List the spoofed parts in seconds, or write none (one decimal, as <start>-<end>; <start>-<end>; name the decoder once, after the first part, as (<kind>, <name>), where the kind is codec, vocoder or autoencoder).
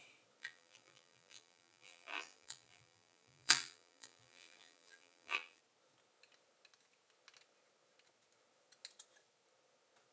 0.4-5.6 (vocoder, BigVGAN v2)